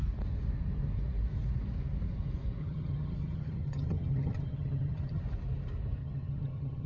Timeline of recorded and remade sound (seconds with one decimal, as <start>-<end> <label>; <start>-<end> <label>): 0.0-2.6 recorded; 2.6-5.2 remade; 5.2-6.0 recorded; 6.0-6.9 remade